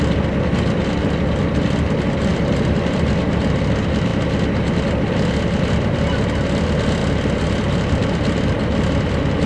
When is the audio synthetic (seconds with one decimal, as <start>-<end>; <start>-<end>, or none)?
2.3-3.1; 7.0-9.1